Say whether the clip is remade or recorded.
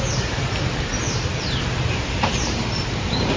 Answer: remade